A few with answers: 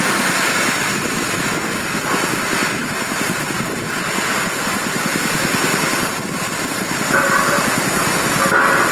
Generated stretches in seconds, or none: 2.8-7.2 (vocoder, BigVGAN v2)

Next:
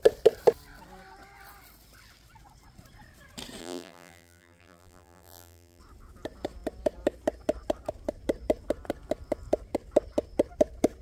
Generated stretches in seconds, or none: 3.6-5.8 (vocoder, BigVGAN v2)

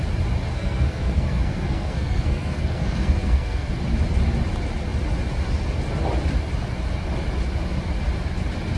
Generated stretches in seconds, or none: 0.5-3.7 (codec, SNAC)

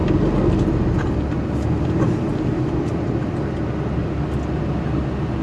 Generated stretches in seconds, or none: none